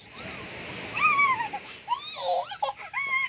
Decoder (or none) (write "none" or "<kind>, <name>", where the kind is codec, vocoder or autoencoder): none